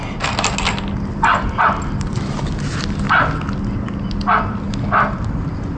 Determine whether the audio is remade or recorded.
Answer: recorded